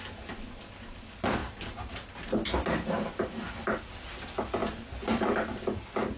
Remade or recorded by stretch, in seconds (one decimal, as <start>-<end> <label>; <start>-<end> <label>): 0.0-6.2 recorded